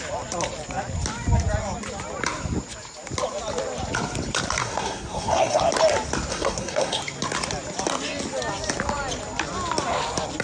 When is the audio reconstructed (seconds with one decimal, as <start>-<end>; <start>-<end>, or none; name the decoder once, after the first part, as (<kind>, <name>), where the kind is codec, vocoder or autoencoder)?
4.6-5.6 (codec, SNAC); 6.3-7.0